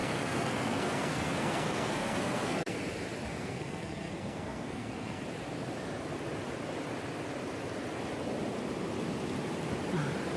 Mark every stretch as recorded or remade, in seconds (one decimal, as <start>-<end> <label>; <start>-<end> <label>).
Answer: 0.0-2.8 remade; 2.8-3.3 recorded; 3.3-5.2 remade; 5.2-10.4 recorded